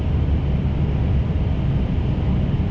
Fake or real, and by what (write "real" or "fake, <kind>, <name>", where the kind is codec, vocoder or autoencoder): real